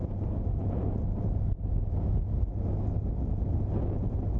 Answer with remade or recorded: recorded